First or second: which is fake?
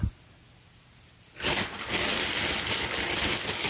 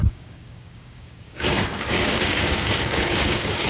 second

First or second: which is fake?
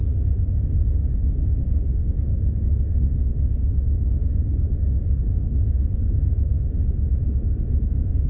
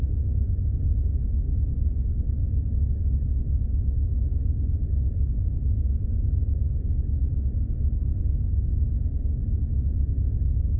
first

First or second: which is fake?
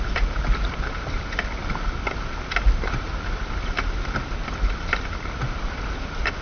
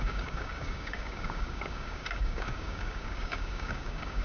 second